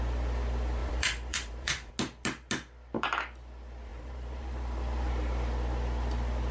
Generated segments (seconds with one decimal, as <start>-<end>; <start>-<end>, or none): 0.8-1.9; 3.9-5.1